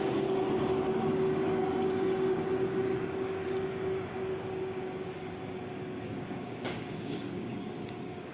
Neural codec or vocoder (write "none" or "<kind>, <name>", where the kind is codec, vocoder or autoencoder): codec, DAC